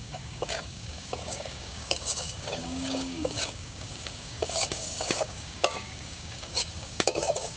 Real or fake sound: fake